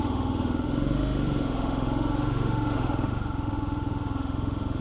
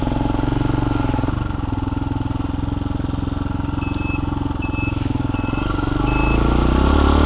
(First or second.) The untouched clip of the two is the second